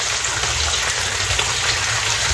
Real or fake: real